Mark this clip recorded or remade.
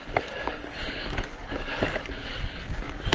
remade